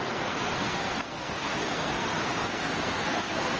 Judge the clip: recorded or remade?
remade